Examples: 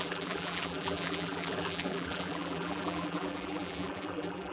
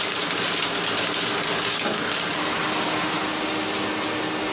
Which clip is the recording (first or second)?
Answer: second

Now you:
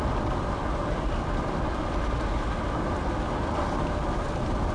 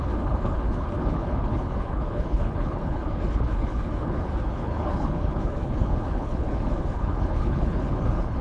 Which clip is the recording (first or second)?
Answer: first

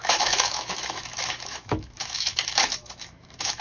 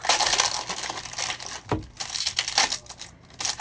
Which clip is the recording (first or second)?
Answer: second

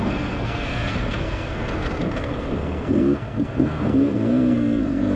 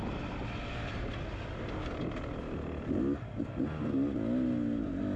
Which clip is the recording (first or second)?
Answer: second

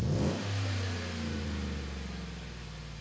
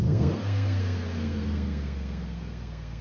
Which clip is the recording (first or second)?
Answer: first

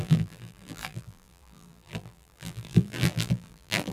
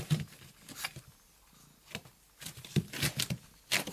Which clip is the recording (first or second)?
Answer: second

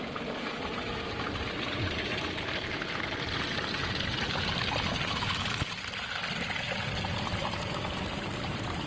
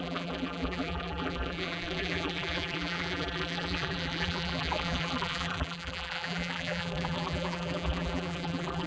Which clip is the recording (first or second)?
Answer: first